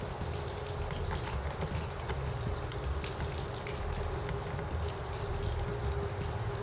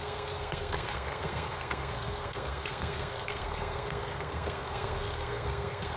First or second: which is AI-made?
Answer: second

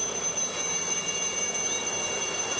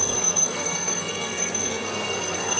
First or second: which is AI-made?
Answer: second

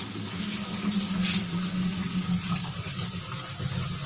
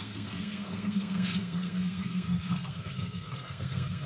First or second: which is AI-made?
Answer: second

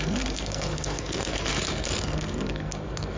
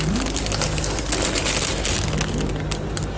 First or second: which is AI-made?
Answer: first